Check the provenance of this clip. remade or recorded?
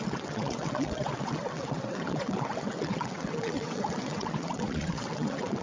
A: remade